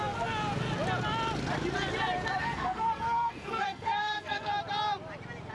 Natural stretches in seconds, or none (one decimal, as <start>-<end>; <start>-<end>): 0.0-2.4; 4.5-5.5